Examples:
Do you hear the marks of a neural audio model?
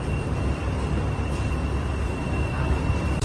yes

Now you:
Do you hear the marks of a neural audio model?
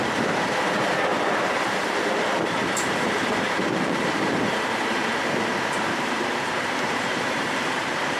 yes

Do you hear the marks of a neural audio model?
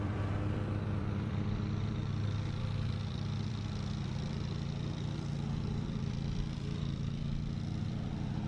yes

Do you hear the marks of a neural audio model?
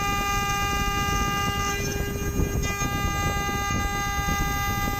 no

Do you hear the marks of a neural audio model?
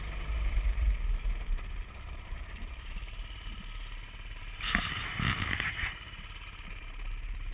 yes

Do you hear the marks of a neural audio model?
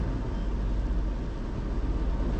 no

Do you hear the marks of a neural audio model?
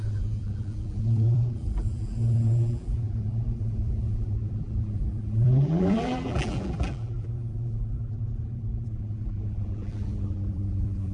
yes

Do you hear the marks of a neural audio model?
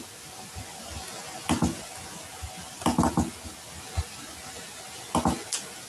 no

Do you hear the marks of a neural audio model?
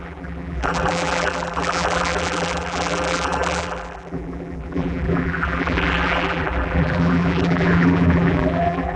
yes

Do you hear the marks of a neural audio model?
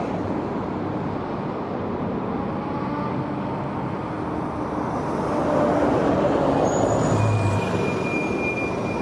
no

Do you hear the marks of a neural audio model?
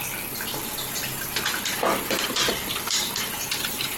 no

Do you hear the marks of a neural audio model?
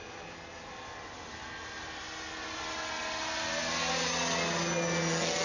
no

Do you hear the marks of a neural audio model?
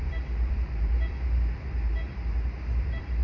yes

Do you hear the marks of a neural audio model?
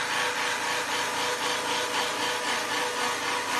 no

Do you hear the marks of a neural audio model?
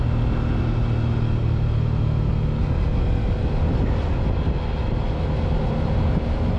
no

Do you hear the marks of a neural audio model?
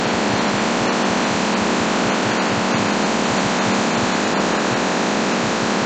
no